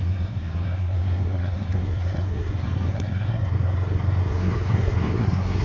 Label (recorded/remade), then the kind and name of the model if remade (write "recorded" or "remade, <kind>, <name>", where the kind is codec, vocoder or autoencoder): remade, codec, SNAC